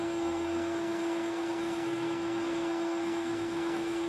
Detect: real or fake fake